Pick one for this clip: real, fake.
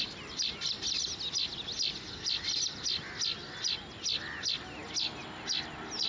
real